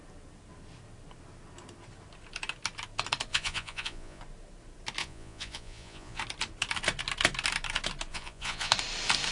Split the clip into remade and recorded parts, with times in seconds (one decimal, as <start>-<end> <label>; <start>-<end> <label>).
0.0-3.3 recorded; 3.3-4.2 remade; 4.2-5.0 recorded; 5.0-6.2 remade; 6.2-8.1 recorded; 8.1-8.7 remade; 8.7-9.3 recorded